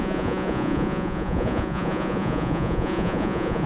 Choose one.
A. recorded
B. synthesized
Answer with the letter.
B